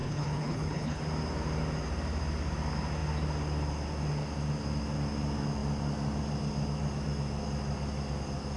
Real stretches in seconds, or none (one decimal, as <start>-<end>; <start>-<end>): 1.0-8.6